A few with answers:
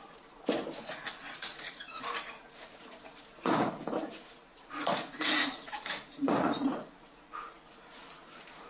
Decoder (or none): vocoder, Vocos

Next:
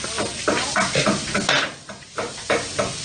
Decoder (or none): none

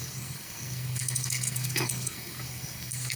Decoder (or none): codec, SNAC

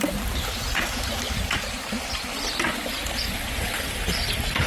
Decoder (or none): none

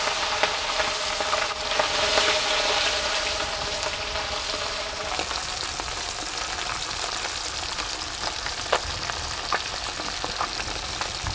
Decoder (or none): none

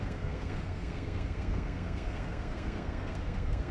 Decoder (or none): codec, SNAC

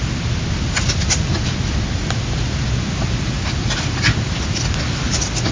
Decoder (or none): none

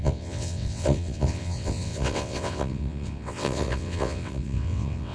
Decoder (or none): vocoder, WaveNeXt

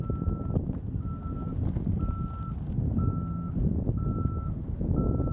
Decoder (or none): none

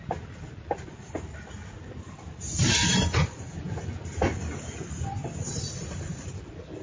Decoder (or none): none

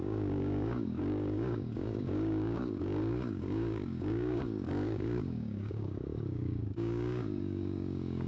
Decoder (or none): codec, DAC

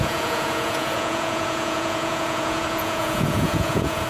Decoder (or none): vocoder, Vocos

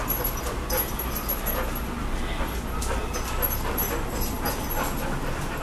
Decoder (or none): none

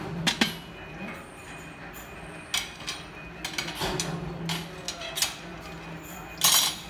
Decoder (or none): none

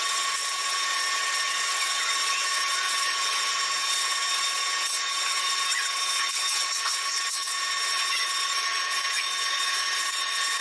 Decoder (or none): vocoder, WaveNeXt